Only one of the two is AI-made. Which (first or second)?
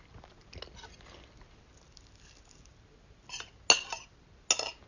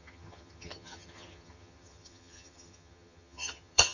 second